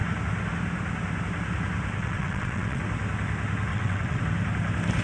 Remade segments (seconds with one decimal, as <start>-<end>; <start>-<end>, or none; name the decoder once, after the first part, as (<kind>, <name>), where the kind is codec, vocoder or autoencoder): 2.0-2.8 (vocoder, WaveNeXt); 3.7-4.2